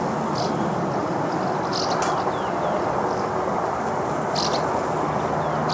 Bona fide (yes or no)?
yes